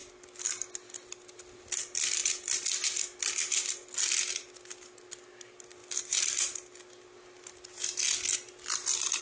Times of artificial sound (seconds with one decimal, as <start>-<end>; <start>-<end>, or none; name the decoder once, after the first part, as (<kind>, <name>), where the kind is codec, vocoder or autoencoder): none